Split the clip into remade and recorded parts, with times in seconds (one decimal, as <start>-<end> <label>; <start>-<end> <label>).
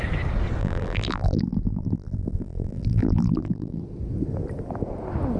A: 0.0-0.6 recorded; 0.6-3.8 remade; 3.8-5.4 recorded